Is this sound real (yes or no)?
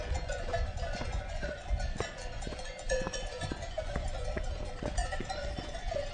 no